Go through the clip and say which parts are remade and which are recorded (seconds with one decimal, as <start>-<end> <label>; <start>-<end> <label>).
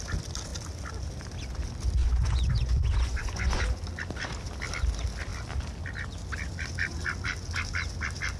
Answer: 0.0-2.0 recorded; 2.0-3.6 remade; 3.6-8.4 recorded